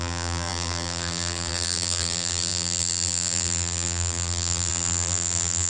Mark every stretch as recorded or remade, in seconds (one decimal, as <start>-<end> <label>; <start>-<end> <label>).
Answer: 0.0-5.7 remade